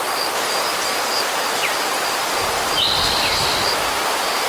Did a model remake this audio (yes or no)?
yes